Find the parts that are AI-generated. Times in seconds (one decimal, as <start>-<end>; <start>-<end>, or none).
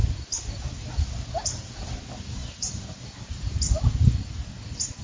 2.4-3.6